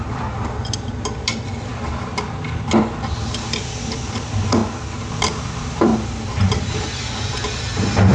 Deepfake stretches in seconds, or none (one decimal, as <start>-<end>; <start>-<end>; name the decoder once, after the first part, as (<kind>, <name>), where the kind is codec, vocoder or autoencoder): 0.0-1.7 (vocoder, BigVGAN v2); 3.3-4.6; 5.1-5.9; 6.7-8.1